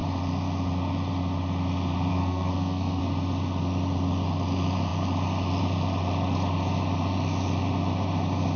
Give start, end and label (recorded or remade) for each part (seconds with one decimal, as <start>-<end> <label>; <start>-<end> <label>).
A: 0.0-2.1 recorded; 2.1-3.0 remade; 3.0-8.6 recorded